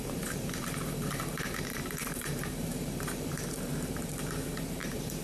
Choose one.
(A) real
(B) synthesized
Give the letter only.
B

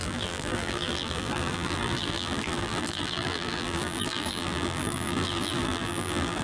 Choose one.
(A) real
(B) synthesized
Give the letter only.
B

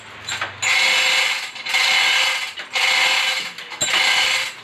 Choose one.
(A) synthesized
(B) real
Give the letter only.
B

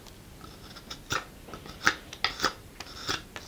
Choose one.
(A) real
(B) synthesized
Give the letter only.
A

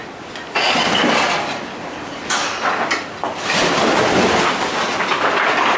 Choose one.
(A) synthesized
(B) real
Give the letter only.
B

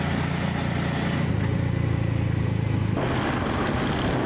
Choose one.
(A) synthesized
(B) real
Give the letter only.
B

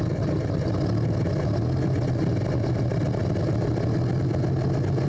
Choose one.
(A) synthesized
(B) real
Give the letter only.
B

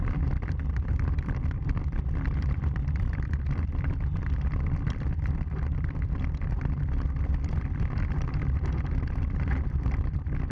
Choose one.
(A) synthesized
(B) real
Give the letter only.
A